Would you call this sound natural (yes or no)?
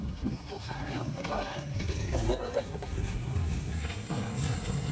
no